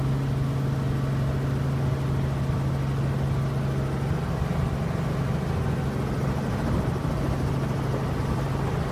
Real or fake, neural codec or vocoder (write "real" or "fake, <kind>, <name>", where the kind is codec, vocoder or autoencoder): real